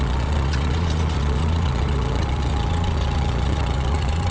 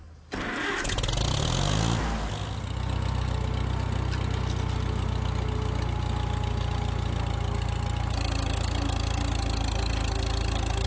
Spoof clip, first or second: first